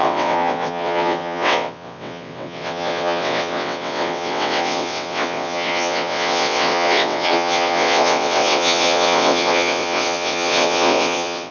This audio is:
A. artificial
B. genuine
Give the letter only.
A